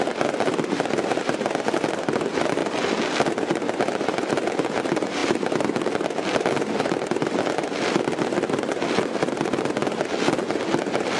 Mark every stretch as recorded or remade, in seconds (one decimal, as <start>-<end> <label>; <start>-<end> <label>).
0.0-11.2 recorded